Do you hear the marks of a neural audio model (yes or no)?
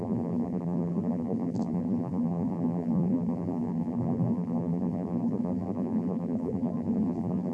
yes